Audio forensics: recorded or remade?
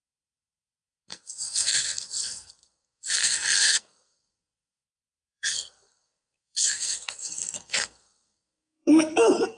remade